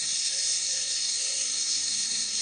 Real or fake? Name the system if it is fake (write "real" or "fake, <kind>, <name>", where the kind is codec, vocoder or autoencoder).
fake, codec, SNAC